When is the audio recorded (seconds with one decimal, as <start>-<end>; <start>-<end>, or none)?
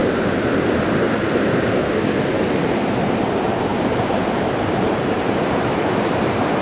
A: 0.0-1.3; 1.8-2.6